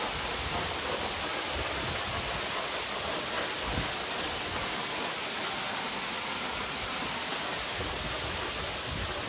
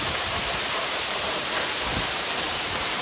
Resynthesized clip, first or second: second